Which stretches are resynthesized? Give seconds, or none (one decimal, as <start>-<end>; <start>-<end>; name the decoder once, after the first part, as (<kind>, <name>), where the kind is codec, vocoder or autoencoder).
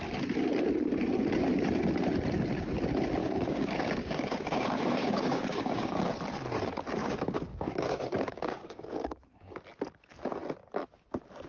3.2-6.1 (codec, DAC); 7.0-9.5